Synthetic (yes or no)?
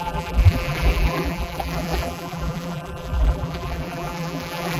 yes